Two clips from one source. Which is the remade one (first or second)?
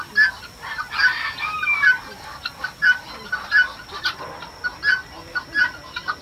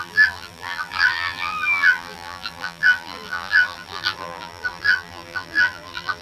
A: second